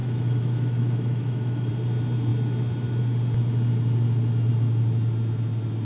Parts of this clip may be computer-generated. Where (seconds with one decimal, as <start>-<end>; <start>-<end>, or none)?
0.0-1.7